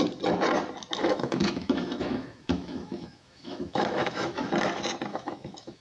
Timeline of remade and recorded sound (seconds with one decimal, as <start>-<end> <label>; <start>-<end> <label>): 0.0-1.0 recorded; 1.0-4.5 remade; 4.5-5.1 recorded; 5.1-5.8 remade